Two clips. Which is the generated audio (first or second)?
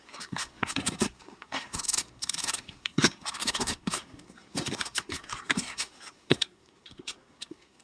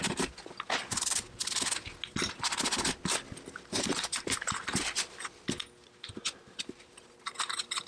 first